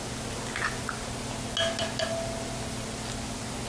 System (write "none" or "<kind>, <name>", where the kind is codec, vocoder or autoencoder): none